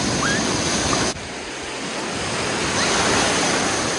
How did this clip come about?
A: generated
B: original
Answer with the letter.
B